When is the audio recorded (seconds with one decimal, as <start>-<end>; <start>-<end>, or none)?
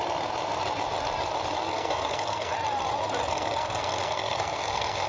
0.0-1.7; 2.5-3.2